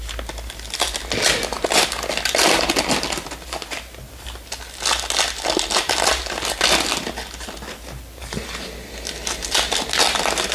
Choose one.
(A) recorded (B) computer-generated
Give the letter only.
A